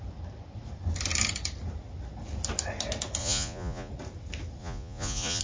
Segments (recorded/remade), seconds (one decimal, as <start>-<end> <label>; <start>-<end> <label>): 0.0-3.2 recorded; 3.2-3.9 remade; 3.9-4.6 recorded; 4.6-5.4 remade